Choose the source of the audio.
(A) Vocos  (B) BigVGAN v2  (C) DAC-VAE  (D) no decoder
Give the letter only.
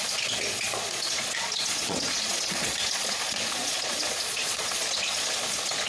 A